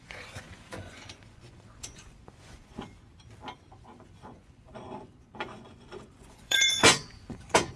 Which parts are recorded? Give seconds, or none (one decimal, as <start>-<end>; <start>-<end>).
3.1-3.7